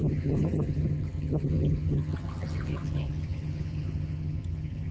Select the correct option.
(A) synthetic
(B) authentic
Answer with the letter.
A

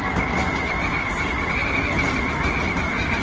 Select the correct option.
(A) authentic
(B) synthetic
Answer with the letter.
A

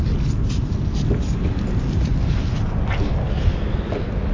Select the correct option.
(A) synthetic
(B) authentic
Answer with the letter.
B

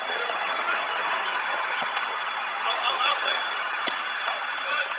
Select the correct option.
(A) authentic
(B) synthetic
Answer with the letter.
B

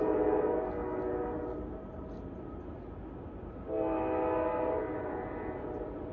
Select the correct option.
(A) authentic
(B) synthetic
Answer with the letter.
A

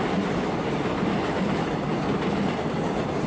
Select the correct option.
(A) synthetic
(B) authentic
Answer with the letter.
B